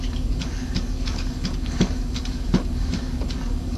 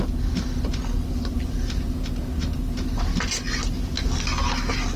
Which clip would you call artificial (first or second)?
first